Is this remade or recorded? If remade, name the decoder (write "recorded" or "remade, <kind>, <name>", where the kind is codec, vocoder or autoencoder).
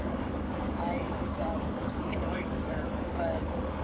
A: remade, codec, DAC